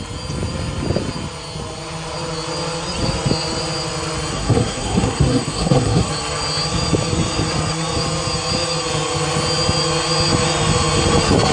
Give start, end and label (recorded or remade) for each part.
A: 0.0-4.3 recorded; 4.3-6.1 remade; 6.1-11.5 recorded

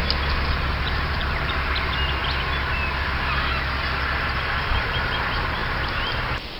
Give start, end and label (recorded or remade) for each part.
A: 0.0-0.5 recorded; 0.5-2.2 remade; 2.2-4.6 recorded; 4.6-6.6 remade

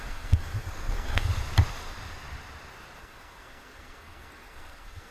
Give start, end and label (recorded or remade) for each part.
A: 0.0-1.3 remade; 1.3-3.0 recorded; 3.0-5.1 remade

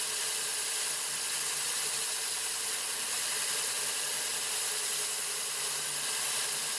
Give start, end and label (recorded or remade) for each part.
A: 0.0-4.3 remade; 4.3-5.7 recorded; 5.7-6.8 remade